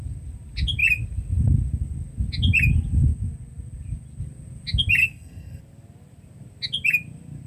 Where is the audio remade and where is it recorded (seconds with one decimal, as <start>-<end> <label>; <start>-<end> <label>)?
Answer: 0.0-5.0 recorded; 5.0-5.6 remade; 5.6-7.5 recorded